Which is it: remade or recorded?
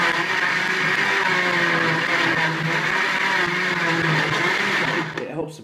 recorded